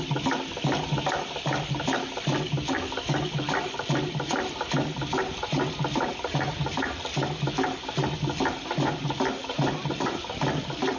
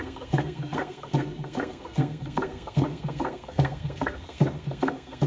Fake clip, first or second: second